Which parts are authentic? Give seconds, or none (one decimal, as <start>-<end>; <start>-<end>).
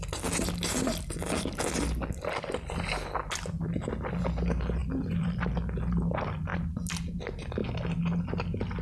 0.0-4.8; 5.5-8.8